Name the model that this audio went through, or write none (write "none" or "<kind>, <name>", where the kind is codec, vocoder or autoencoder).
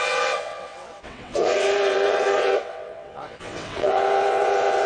vocoder, WaveNeXt